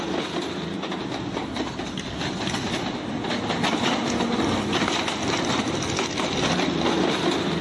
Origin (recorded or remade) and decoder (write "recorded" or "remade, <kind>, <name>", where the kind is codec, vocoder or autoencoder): recorded